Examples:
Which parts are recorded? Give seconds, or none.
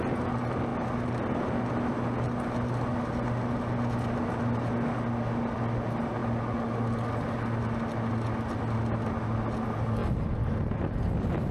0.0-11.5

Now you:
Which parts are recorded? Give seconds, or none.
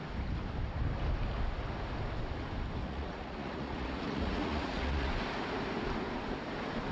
0.0-2.8; 5.1-6.9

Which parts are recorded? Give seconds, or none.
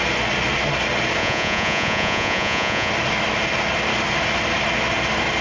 0.0-1.2; 2.9-5.4